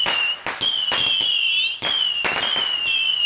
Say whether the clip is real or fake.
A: real